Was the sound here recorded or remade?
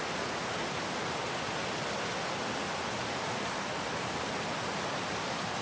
recorded